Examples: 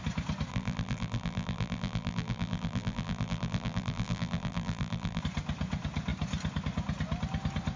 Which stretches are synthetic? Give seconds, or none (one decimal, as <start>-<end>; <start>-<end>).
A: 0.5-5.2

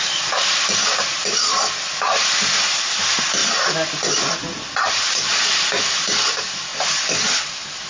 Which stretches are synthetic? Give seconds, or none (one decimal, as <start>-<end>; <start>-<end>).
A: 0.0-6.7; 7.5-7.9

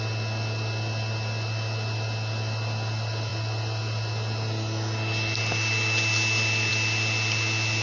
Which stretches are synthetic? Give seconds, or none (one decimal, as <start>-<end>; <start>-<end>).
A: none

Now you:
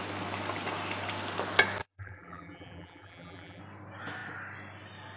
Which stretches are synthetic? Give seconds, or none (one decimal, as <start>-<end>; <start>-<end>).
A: 1.8-3.6

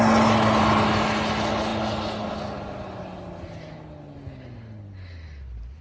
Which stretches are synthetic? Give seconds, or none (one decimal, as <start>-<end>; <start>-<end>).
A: none

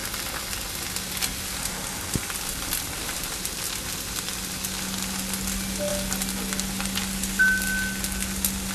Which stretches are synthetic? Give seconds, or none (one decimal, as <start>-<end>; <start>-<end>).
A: none

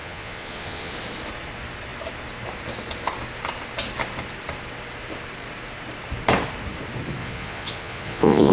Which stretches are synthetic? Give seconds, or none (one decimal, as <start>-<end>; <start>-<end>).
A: 0.0-0.9; 7.2-8.5

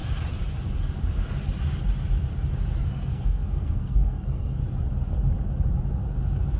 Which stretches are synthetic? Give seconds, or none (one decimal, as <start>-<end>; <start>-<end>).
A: 2.8-4.6